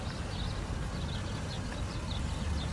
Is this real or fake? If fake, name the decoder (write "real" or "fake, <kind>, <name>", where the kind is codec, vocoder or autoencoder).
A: real